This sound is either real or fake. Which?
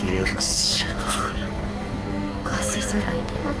fake